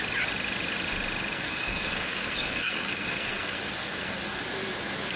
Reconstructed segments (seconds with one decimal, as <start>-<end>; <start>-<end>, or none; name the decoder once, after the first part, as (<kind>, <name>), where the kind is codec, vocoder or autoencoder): 1.3-4.4 (codec, SNAC)